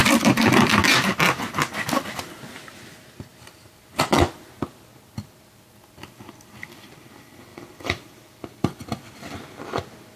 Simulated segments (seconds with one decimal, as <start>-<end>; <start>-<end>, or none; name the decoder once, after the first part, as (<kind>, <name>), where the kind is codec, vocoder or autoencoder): 0.0-0.7 (vocoder, BigVGAN v2); 7.5-8.8